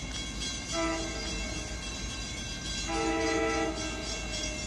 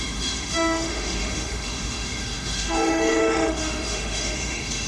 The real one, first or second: first